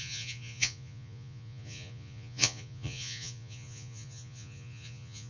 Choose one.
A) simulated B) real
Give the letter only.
A